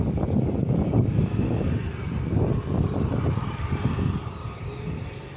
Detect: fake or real real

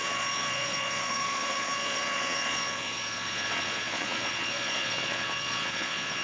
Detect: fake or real fake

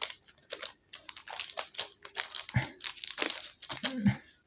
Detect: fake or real real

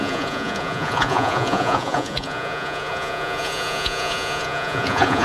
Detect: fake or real fake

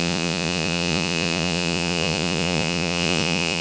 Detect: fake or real fake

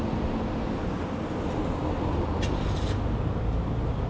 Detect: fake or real real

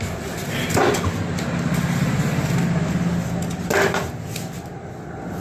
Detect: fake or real real